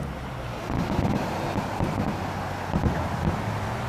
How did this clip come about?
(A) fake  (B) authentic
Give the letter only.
B